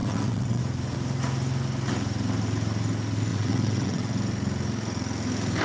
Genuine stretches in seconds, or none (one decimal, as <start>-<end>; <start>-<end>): 0.6-3.3; 4.1-5.6